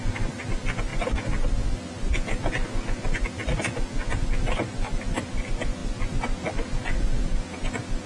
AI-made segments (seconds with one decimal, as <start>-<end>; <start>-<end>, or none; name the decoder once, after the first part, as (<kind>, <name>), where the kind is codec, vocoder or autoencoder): none